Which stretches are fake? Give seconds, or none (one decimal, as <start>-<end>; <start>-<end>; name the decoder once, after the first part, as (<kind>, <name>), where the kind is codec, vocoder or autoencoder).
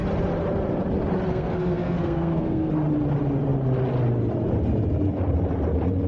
1.3-2.7 (codec, SNAC)